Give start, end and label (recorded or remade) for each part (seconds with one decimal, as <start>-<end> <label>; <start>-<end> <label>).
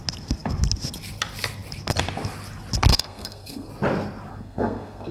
0.0-2.9 recorded; 2.9-3.7 remade; 3.7-4.3 recorded; 4.3-5.1 remade